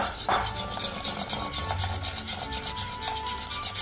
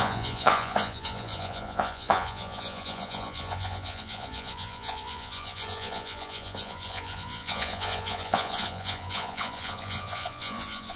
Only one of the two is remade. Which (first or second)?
second